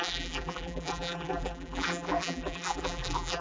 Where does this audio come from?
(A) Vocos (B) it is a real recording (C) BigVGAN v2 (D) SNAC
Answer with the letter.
C